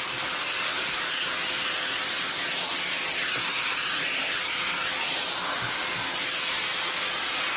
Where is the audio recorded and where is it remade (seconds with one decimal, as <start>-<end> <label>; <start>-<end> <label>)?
0.0-0.7 recorded; 0.7-1.3 remade; 1.3-3.5 recorded; 3.5-5.2 remade; 5.2-7.6 recorded